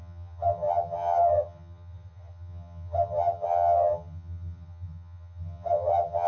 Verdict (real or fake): fake